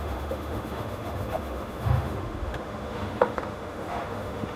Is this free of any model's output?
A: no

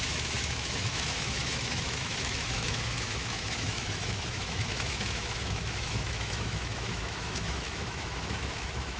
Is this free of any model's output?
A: no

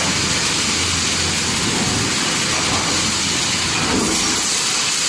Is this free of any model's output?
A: yes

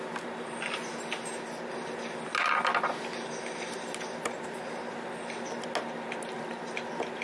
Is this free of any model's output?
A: yes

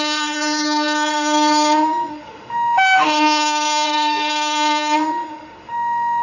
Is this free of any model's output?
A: no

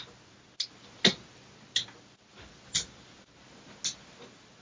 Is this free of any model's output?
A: yes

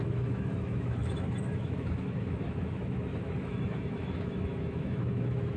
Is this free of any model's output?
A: no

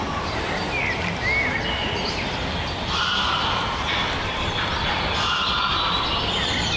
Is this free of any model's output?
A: yes